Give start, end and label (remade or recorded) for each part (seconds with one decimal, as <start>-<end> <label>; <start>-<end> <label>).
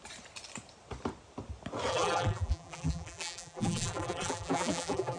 0.0-1.9 recorded; 1.9-5.2 remade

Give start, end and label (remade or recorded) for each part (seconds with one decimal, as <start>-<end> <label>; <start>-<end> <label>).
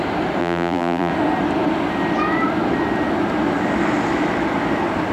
0.0-0.4 recorded; 0.4-1.1 remade; 1.1-5.1 recorded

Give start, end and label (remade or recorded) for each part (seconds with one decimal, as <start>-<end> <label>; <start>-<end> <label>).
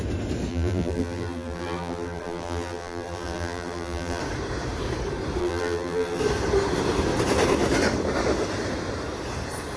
0.0-0.5 recorded; 0.5-4.2 remade; 4.2-5.4 recorded; 5.4-6.2 remade; 6.2-9.8 recorded